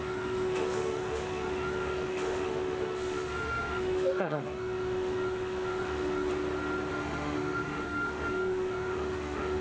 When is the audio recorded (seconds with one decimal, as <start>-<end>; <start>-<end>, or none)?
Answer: 6.3-6.9